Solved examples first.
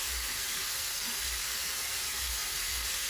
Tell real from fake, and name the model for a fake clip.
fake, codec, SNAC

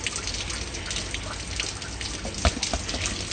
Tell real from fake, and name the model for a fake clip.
real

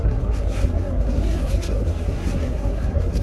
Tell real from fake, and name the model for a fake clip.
fake, codec, SNAC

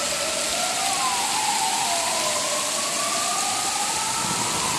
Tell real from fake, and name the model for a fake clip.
real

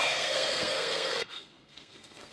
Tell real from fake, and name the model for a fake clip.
fake, codec, SNAC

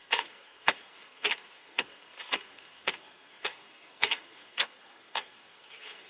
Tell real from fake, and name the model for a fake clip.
fake, codec, SNAC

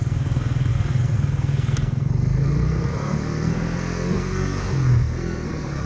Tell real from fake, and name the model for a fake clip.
fake, codec, SNAC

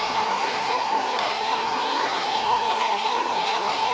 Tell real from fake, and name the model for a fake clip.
fake, codec, SNAC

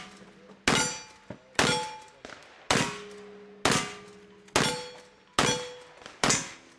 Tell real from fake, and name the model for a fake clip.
real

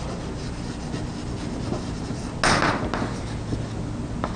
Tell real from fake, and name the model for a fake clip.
real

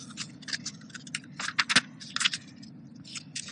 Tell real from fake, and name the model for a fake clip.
real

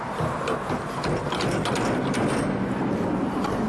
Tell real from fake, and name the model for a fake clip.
real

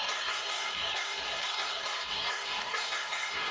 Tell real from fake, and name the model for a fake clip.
fake, codec, SNAC